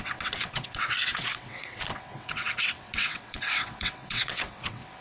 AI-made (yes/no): yes